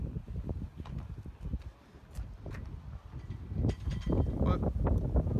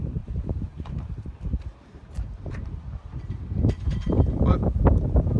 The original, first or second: first